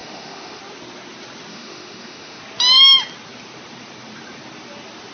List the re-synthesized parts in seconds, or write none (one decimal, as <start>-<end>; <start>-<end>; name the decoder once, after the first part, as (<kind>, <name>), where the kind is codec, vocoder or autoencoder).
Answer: 0.0-0.6 (autoencoder, DAC-VAE); 1.5-2.4